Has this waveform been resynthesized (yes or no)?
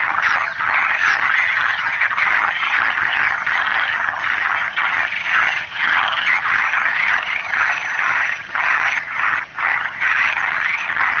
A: yes